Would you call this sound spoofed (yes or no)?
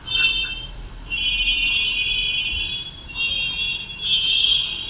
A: yes